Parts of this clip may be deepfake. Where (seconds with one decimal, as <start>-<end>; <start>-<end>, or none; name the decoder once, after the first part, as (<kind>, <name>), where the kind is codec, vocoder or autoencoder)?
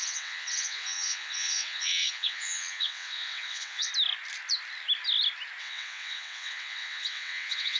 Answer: 0.0-3.9 (vocoder, WaveNeXt); 5.6-7.8